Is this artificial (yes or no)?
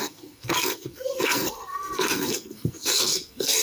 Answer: yes